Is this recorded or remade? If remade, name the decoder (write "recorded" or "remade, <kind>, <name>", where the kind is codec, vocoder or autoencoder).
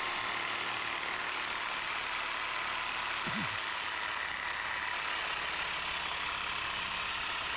recorded